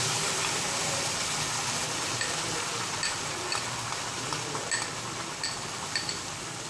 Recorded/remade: recorded